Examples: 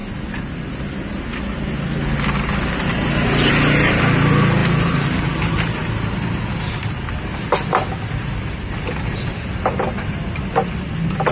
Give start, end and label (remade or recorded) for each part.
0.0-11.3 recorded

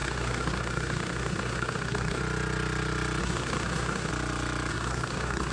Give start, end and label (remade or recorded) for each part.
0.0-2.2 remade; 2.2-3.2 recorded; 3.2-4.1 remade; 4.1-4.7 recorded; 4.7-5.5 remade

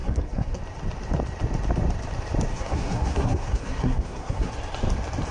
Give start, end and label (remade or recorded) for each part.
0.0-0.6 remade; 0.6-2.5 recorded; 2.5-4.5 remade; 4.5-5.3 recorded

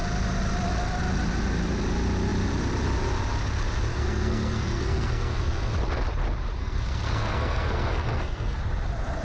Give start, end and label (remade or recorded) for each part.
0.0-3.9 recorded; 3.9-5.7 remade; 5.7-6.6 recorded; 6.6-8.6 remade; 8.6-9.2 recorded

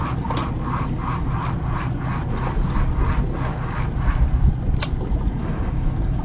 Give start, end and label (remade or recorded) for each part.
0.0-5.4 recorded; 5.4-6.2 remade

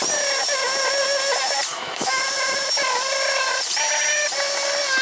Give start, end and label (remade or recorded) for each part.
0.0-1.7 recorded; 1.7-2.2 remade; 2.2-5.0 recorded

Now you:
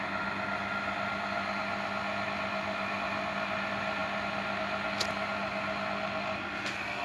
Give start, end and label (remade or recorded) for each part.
0.0-7.0 recorded